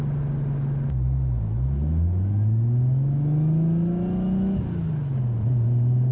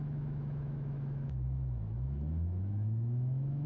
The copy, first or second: second